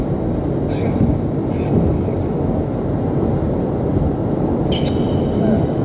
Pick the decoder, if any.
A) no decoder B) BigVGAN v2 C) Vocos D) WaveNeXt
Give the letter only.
A